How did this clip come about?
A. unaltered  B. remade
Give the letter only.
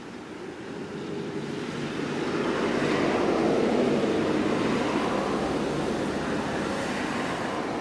A